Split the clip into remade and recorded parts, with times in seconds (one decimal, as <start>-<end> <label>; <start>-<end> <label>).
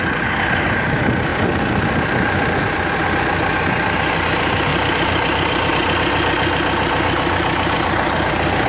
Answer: 0.0-1.3 recorded; 1.3-2.6 remade; 2.6-4.7 recorded; 4.7-5.7 remade; 5.7-8.7 recorded